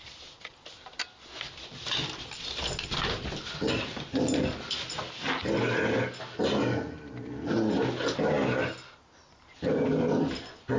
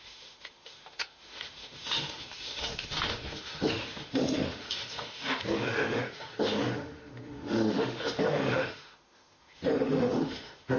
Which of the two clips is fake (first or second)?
second